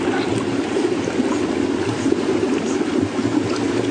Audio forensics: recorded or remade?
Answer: recorded